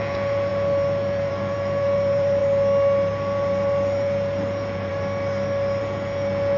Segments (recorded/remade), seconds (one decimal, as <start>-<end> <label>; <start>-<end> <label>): 0.0-2.4 remade; 2.4-3.1 recorded; 3.1-4.9 remade; 4.9-5.8 recorded; 5.8-6.6 remade